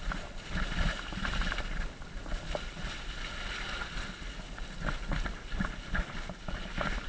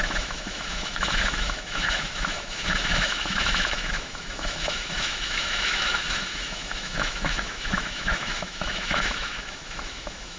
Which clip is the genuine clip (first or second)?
first